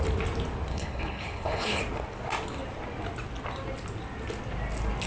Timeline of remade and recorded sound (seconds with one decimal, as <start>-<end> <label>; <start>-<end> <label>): 0.0-0.7 recorded; 0.7-1.8 remade; 1.8-5.1 recorded